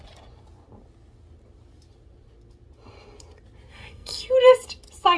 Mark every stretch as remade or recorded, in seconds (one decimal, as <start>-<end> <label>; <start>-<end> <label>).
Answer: 0.0-3.7 recorded; 3.7-4.3 remade; 4.3-5.2 recorded